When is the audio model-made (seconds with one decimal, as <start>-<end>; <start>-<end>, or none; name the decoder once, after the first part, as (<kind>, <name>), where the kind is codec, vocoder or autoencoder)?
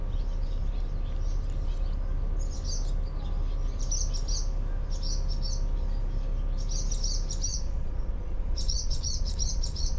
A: 7.5-10.0 (vocoder, Vocos)